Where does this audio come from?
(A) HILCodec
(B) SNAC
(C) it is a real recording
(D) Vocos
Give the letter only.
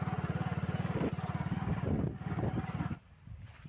C